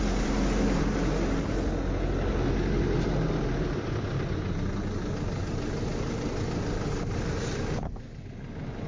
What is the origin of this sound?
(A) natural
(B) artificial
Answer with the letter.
A